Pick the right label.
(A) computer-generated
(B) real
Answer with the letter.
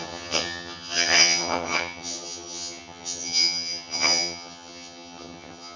A